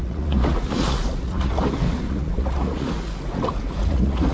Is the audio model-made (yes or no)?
yes